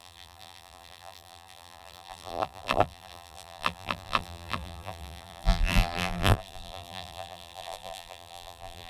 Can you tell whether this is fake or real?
fake